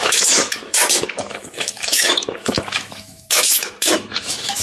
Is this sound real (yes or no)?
no